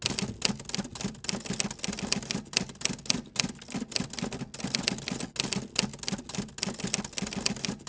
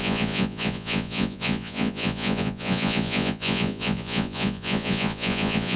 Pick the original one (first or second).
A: first